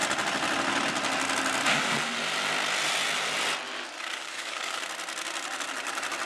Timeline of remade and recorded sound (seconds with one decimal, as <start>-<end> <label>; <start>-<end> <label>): 0.0-4.2 recorded; 4.2-4.8 remade; 4.8-6.3 recorded

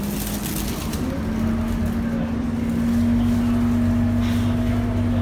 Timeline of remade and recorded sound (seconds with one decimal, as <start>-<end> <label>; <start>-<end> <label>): 0.0-5.2 recorded